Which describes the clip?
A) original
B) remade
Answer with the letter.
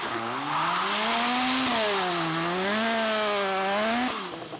A